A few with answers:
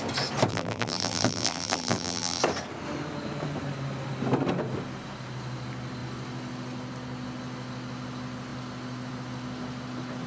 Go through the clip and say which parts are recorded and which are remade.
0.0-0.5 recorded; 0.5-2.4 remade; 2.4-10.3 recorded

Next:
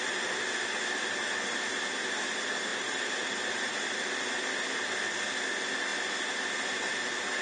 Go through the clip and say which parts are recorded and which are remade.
0.0-2.7 recorded; 2.7-3.7 remade; 3.7-7.4 recorded

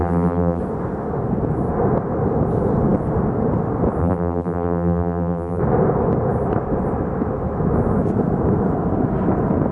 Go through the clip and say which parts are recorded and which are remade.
0.0-0.6 remade; 0.6-4.0 recorded; 4.0-5.6 remade; 5.6-9.7 recorded